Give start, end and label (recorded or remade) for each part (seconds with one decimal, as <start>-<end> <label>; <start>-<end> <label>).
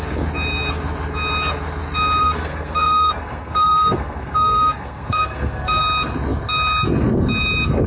0.0-2.2 recorded; 2.2-5.8 remade; 5.8-7.9 recorded